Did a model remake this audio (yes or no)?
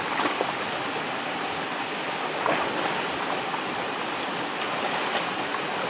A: no